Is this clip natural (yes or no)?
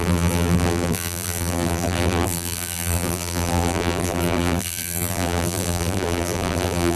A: no